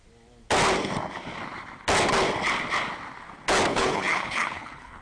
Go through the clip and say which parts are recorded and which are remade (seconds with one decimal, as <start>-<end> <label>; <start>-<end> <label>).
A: 0.0-3.7 recorded; 3.7-5.0 remade